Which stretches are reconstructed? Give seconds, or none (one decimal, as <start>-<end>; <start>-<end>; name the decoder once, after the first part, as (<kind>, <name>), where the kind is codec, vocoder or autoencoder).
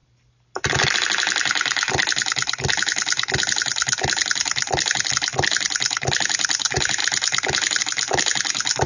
none